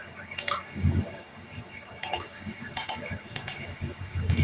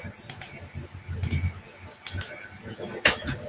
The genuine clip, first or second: second